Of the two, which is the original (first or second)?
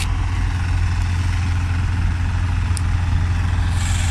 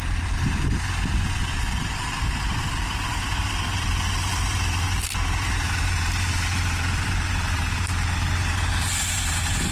first